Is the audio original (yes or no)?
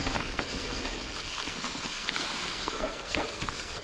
no